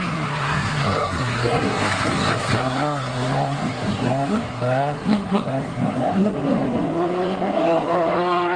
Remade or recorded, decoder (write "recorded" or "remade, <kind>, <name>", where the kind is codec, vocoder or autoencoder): remade, codec, SNAC